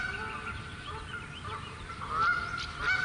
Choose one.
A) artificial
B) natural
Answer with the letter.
B